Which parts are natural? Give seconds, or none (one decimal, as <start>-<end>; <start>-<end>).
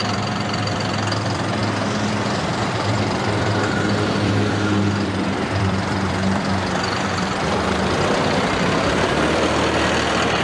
1.6-2.1